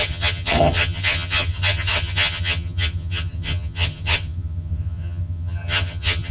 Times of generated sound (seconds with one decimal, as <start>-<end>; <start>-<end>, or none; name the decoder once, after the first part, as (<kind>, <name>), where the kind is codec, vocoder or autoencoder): 0.0-6.3 (vocoder, HiFi-GAN)